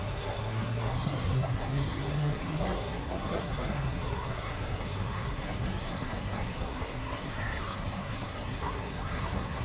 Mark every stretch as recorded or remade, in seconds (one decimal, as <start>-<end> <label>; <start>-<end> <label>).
0.0-9.6 remade